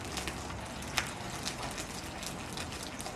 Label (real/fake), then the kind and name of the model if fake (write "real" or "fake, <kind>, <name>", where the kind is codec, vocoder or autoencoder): real